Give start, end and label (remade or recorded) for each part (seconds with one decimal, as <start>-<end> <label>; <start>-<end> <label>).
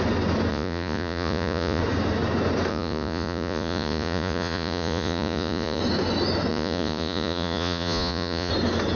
0.0-0.5 recorded; 0.5-1.8 remade; 1.8-2.7 recorded; 2.7-5.8 remade; 5.8-6.5 recorded; 6.5-8.5 remade; 8.5-9.0 recorded